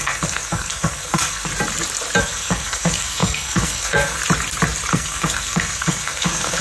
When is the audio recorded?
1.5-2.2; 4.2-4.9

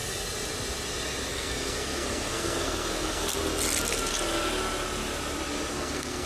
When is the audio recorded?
0.0-1.3; 3.4-5.7

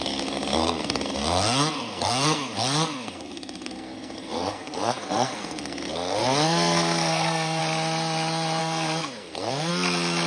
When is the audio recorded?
7.6-8.6; 9.7-10.3

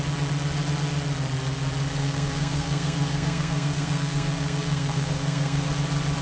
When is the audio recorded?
0.0-2.0; 5.7-6.2